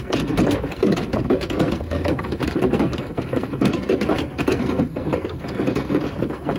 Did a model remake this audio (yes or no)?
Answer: yes